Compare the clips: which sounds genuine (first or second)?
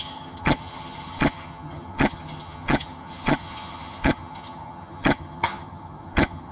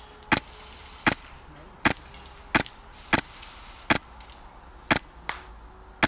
second